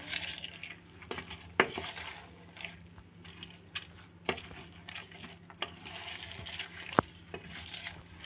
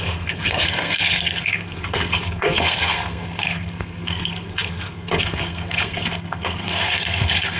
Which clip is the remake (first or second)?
second